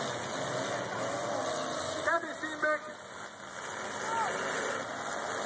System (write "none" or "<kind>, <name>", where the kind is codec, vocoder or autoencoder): none